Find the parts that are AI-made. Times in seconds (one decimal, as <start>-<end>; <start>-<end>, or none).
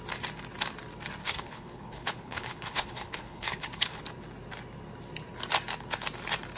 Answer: 1.2-4.0